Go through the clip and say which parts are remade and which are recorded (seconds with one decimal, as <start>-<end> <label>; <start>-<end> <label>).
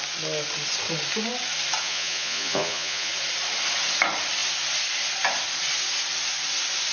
0.0-1.8 recorded; 1.8-3.1 remade; 3.1-6.9 recorded